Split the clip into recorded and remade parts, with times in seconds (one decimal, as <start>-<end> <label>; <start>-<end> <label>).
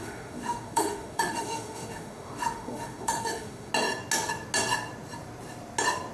0.0-3.7 remade; 3.7-6.1 recorded